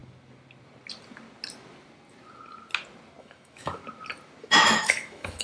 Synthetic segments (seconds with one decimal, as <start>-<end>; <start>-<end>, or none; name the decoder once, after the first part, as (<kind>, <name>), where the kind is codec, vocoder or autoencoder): 3.2-3.8 (autoencoder, DAC-VAE); 4.4-5.4